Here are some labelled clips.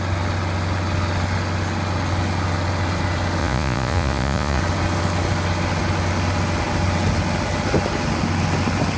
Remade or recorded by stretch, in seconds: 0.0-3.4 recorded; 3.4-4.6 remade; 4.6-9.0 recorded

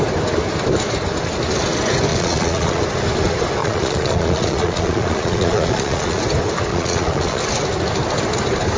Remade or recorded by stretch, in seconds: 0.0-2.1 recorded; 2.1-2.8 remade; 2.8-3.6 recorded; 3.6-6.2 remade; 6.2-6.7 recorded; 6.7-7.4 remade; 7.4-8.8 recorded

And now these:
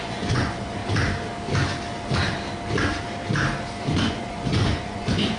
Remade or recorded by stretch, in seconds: 0.0-0.8 remade; 0.8-4.0 recorded; 4.0-5.4 remade

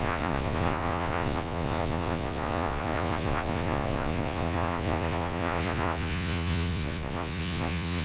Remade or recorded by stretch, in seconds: 0.0-8.0 remade

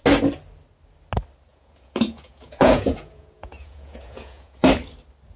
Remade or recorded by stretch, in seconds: 0.0-1.5 recorded; 1.5-4.7 remade; 4.7-5.4 recorded

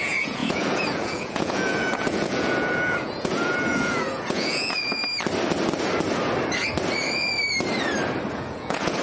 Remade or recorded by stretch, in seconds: 0.0-5.0 remade; 5.0-8.3 recorded; 8.3-9.0 remade

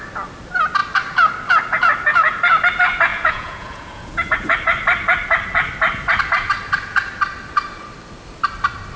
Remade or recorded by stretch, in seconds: 0.0-3.1 recorded; 3.1-4.3 remade; 4.3-9.0 recorded

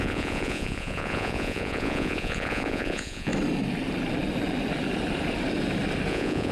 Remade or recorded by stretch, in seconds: 0.0-3.3 remade; 3.3-6.1 recorded; 6.1-6.5 remade